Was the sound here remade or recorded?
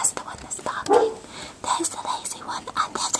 recorded